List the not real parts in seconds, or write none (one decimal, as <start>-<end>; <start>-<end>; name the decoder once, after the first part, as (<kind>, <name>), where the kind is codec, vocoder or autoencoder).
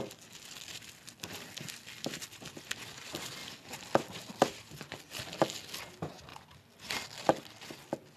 none